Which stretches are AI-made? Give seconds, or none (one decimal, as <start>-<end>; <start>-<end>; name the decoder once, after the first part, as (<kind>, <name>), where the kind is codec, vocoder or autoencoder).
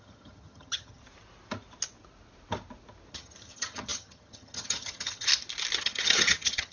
0.0-1.0 (vocoder, HiFi-GAN); 3.1-5.3; 5.8-6.7